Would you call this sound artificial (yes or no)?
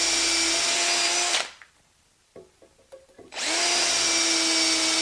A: no